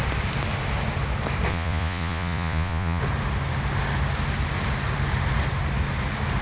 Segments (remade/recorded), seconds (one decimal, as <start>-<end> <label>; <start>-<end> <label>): 0.0-1.5 recorded; 1.5-3.0 remade; 3.0-6.4 recorded